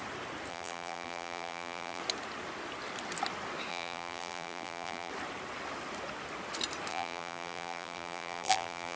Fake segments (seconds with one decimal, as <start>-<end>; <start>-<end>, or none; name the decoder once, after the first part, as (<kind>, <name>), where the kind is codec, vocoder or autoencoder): 0.5-2.0 (vocoder, BigVGAN v2); 3.7-5.1; 6.9-9.0